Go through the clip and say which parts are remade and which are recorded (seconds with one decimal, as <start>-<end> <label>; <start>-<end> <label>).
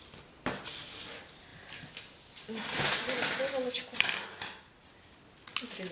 0.0-5.9 recorded